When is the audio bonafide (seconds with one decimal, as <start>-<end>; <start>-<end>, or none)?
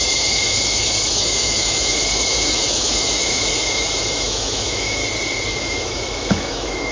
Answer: 5.0-5.6